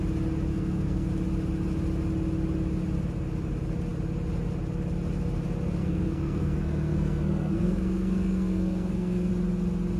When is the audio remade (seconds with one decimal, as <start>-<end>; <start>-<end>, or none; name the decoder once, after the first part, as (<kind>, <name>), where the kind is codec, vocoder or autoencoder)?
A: 0.5-1.1 (codec, SNAC); 5.8-9.3